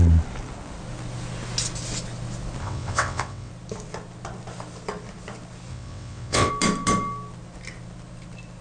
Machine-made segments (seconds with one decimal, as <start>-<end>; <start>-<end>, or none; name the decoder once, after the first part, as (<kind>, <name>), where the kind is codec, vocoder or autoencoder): 2.6-3.5 (vocoder, WaveNeXt); 5.7-6.5